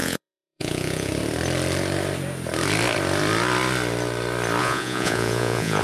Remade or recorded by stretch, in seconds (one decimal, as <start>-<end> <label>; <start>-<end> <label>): 0.0-1.1 remade; 1.1-4.6 recorded; 4.6-5.8 remade

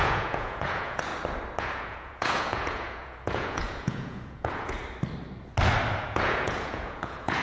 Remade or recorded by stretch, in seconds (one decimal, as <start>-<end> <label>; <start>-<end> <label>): 0.0-1.1 remade; 1.1-1.6 recorded; 1.6-4.8 remade; 4.8-5.9 recorded; 5.9-7.4 remade

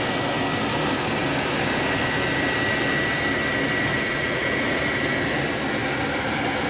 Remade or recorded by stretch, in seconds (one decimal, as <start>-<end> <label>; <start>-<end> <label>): 0.0-3.9 recorded; 3.9-4.8 remade; 4.8-6.7 recorded

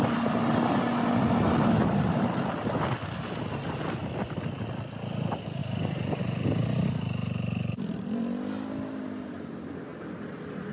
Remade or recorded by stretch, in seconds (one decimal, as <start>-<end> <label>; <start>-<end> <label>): 0.0-10.7 recorded

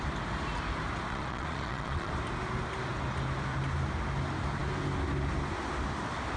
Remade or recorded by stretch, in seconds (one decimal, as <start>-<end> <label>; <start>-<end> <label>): 0.0-1.1 recorded; 1.1-2.1 remade; 2.1-6.4 recorded

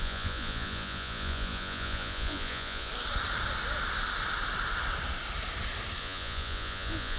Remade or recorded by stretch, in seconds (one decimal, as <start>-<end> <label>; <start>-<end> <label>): 0.0-2.9 remade; 2.9-6.0 recorded; 6.0-7.2 remade

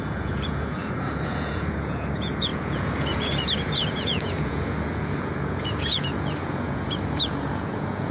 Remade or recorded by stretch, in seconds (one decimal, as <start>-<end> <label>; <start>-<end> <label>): 0.0-8.1 remade